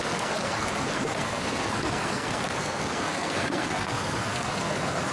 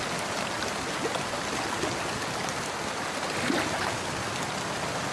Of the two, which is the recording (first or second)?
second